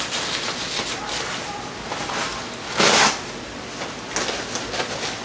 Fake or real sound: real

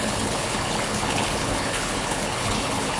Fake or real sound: fake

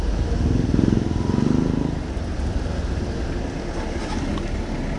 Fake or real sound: real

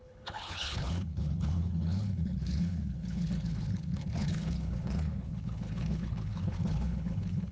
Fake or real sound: fake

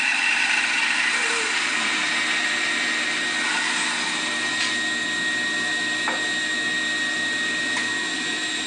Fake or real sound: real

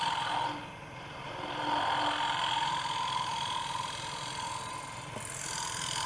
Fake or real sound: real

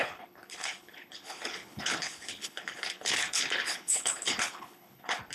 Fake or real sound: fake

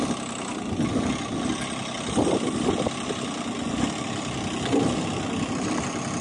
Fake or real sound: real